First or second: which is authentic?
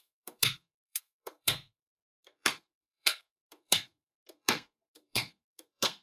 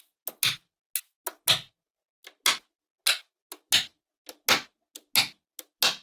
second